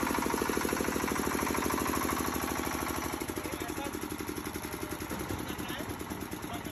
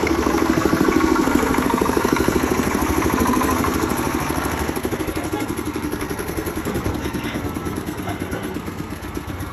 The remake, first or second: second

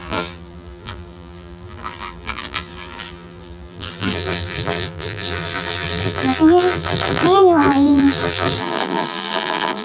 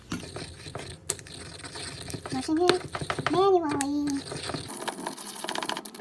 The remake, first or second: first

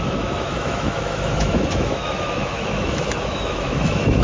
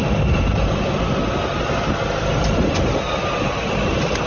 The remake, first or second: first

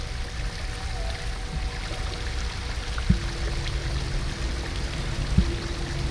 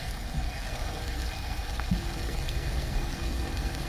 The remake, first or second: second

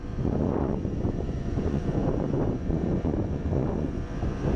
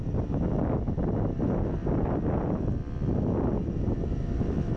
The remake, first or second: first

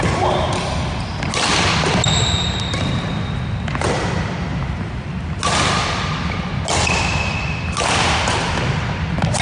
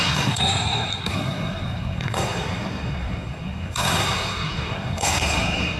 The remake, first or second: second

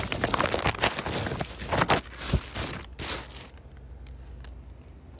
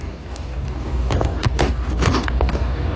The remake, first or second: second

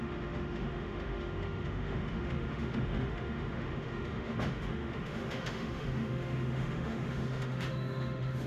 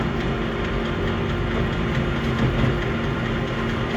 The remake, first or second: first